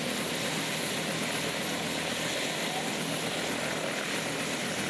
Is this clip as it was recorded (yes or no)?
yes